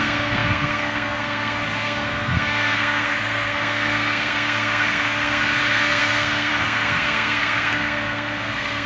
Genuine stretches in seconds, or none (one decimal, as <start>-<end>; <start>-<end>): none